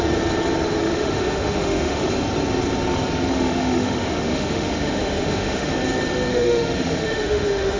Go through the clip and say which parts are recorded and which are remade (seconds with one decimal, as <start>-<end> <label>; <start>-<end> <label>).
0.0-0.8 recorded; 0.8-2.1 remade; 2.1-3.3 recorded; 3.3-5.7 remade; 5.7-6.3 recorded; 6.3-7.8 remade